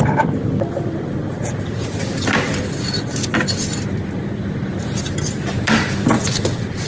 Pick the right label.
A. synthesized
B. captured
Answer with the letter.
B